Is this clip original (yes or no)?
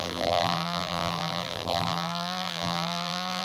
no